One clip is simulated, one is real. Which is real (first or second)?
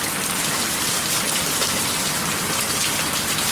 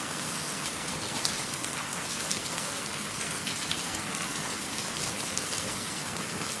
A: first